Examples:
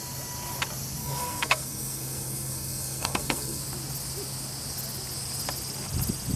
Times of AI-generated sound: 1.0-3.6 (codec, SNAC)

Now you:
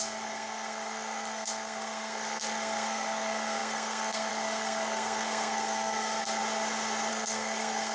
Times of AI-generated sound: 0.0-6.4 (codec, SNAC); 7.1-7.9

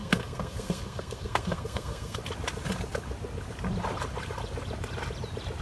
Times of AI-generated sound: 0.0-2.2 (codec, SNAC)

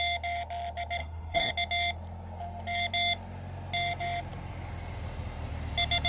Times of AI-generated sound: 1.0-1.5 (codec, SNAC)

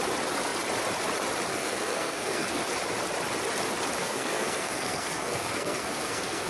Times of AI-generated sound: 1.5-2.6 (codec, SNAC); 4.0-6.5

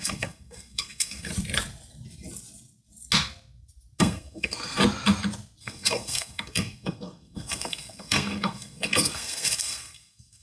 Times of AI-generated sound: 0.0-1.3 (codec, SNAC); 4.0-4.8; 5.6-10.4

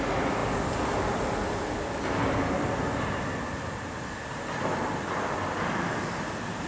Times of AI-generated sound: none